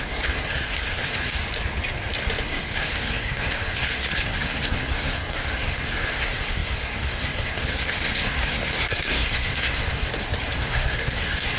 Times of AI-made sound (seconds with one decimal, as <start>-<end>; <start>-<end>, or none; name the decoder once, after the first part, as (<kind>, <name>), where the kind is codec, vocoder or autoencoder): 0.0-1.4 (codec, SNAC); 2.4-10.1; 10.6-11.6